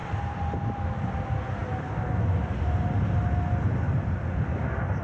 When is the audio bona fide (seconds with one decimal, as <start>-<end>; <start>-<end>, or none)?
0.0-5.0